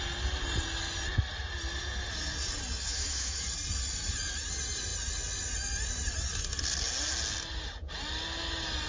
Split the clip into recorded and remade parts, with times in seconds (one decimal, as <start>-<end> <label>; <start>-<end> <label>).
0.0-2.8 recorded; 2.8-3.4 remade; 3.4-8.9 recorded